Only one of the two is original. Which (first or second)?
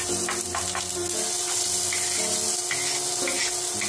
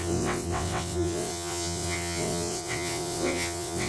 first